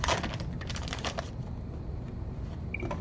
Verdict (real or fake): real